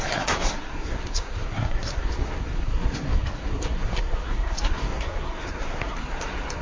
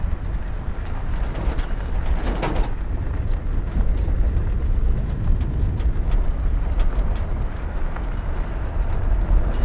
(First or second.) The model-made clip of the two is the first